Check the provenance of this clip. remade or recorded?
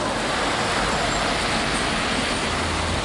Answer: recorded